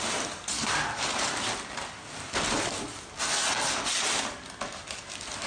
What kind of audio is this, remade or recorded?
recorded